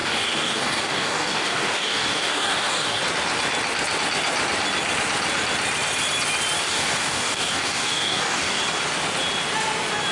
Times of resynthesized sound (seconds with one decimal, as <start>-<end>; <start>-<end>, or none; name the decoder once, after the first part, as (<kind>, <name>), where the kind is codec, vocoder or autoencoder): 0.0-3.0 (codec, DAC); 6.6-8.6